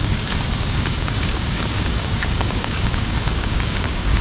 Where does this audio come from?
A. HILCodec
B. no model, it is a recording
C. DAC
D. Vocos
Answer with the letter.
C